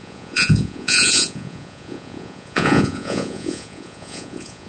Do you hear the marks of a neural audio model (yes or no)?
yes